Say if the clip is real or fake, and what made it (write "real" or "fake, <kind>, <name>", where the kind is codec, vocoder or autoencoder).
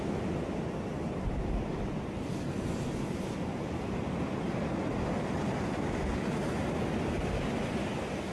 real